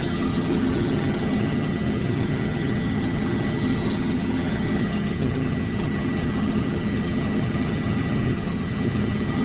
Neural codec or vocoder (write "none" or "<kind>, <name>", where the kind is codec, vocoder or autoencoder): vocoder, HiFi-GAN